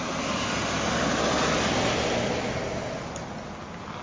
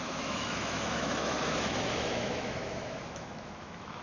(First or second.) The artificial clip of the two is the second